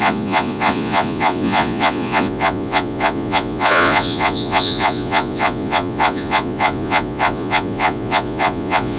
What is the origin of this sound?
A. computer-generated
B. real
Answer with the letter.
A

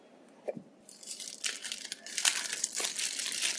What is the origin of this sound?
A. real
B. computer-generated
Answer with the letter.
A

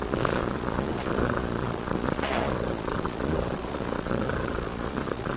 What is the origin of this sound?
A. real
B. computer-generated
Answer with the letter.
B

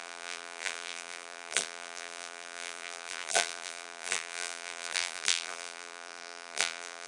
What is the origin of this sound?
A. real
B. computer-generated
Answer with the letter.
B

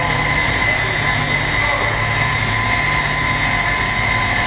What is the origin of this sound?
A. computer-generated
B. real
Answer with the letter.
B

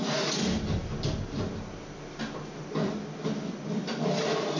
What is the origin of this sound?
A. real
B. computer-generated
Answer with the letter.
A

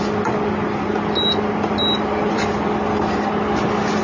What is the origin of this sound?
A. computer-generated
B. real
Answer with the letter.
B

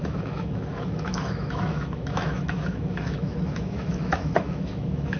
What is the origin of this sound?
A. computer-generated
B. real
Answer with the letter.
A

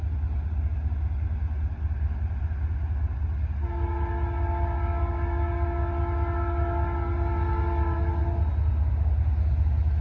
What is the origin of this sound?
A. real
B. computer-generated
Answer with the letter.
A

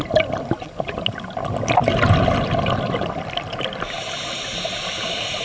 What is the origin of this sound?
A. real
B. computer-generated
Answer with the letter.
A